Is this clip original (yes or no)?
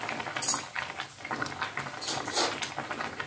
yes